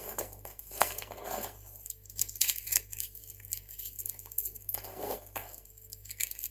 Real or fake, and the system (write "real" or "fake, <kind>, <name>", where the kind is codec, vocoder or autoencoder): fake, codec, SNAC